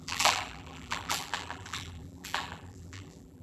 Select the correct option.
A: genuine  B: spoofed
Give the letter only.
B